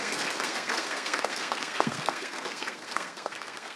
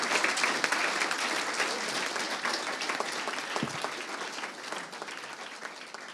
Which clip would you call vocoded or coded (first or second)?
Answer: first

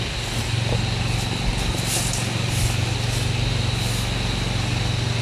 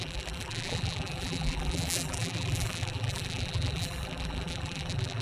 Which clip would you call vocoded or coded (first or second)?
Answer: second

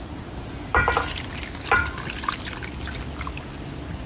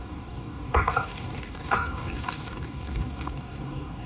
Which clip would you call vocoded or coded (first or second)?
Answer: second